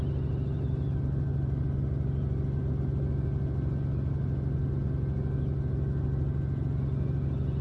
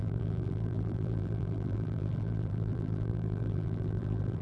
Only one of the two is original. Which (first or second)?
first